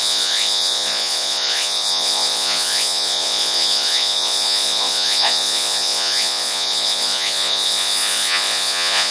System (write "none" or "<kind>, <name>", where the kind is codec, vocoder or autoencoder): vocoder, Vocos